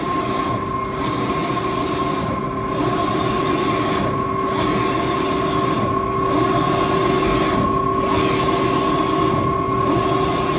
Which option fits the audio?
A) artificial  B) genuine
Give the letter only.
B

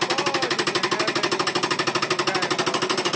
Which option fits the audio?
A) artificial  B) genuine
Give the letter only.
B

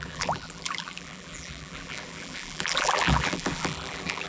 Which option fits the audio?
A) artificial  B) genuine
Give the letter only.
A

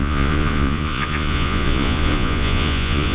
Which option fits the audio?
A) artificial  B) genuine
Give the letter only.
A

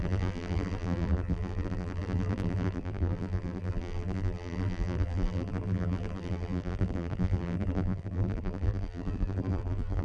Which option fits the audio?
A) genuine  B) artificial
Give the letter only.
B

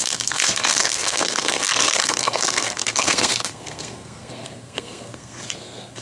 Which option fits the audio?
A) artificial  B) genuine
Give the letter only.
A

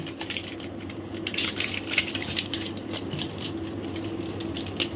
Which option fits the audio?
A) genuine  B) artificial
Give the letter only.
A